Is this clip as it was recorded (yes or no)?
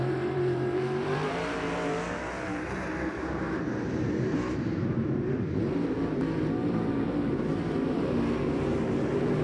no